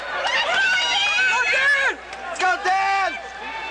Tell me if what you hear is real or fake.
real